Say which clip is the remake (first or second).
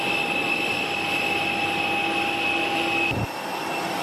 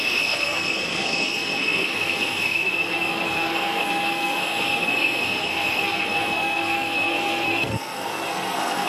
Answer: second